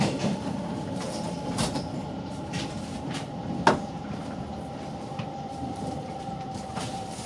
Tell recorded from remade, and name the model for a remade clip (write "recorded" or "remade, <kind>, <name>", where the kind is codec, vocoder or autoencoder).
remade, vocoder, BigVGAN v2